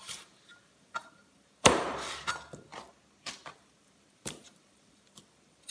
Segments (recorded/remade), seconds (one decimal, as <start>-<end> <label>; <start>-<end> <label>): 0.0-2.7 remade; 2.7-3.5 recorded; 3.5-5.7 remade

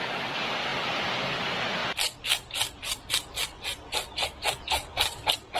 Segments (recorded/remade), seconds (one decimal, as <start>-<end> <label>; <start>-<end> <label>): 0.0-1.8 recorded; 1.8-3.1 remade; 3.1-5.6 recorded